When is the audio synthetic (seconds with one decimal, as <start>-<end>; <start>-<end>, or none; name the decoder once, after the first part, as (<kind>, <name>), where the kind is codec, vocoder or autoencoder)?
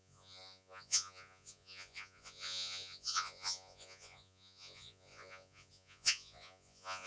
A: 0.0-7.1 (vocoder, Vocos)